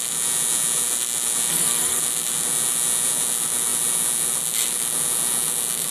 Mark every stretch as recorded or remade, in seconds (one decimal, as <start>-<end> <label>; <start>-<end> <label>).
0.0-1.5 recorded; 1.5-2.0 remade; 2.0-5.9 recorded